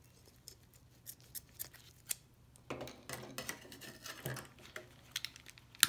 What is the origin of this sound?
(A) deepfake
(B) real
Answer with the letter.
B